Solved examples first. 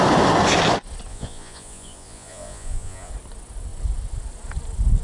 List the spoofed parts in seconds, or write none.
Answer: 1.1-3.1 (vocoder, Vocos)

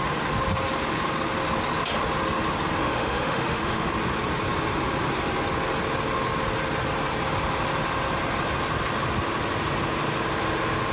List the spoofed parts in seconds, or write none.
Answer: 2.8-3.9 (autoencoder, DAC-VAE)

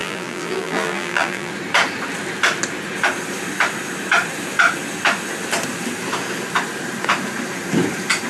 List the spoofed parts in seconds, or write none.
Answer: 0.0-1.5 (vocoder, BigVGAN v2)

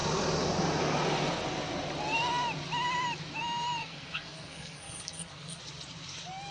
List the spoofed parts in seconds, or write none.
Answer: 3.8-5.6 (codec, SNAC)

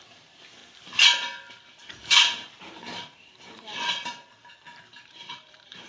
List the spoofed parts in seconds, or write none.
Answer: 0.0-0.6 (vocoder, BigVGAN v2); 1.5-5.9

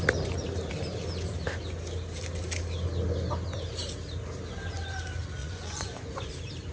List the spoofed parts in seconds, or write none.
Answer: 5.4-6.3 (vocoder, Vocos)

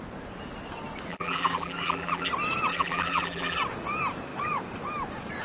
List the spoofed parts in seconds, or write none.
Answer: 1.1-2.3 (vocoder, BigVGAN v2); 2.7-3.6